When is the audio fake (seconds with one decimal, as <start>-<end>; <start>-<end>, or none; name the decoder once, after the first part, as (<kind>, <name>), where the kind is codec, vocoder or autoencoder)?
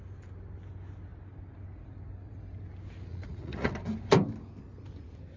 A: 3.1-3.7 (vocoder, Vocos)